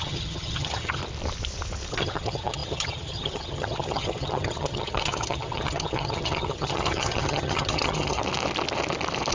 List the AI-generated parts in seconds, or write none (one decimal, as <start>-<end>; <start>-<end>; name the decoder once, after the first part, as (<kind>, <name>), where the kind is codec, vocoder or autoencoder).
0.0-1.0 (vocoder, HiFi-GAN); 1.9-8.2